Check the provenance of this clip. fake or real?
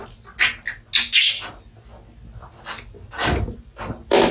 real